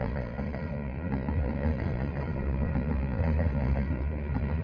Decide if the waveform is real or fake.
fake